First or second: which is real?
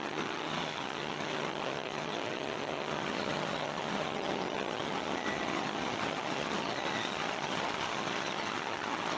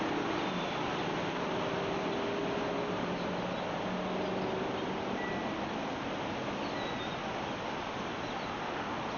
second